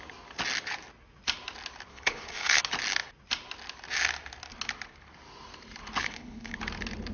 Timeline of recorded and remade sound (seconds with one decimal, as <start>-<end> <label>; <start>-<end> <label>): 0.0-1.9 recorded; 1.9-2.6 remade; 2.6-6.0 recorded; 6.0-6.6 remade; 6.6-7.1 recorded